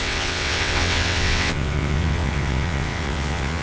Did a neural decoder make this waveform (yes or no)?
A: yes